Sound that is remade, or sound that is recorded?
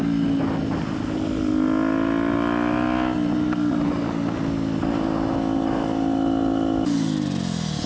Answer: recorded